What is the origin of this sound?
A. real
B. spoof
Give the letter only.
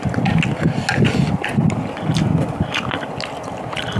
A